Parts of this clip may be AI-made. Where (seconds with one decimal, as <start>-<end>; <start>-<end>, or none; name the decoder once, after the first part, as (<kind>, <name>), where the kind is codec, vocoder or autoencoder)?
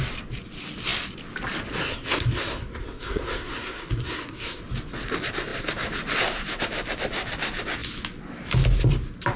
1.8-4.6 (codec, SNAC)